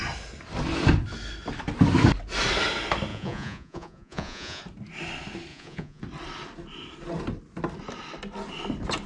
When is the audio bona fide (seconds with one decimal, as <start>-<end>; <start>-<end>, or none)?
0.0-3.1; 4.6-5.5; 6.0-9.1